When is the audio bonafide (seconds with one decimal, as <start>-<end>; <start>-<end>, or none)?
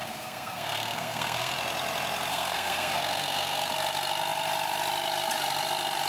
1.5-2.3; 3.7-6.1